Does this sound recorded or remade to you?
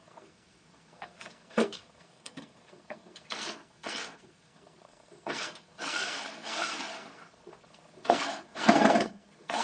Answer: remade